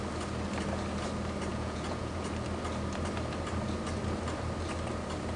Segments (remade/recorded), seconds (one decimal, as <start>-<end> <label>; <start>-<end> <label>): 0.0-1.5 recorded; 1.5-2.3 remade; 2.3-5.4 recorded